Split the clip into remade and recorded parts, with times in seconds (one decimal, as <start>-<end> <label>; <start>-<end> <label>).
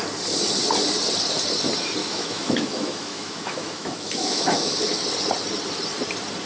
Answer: 0.0-2.0 recorded; 2.0-4.7 remade; 4.7-6.5 recorded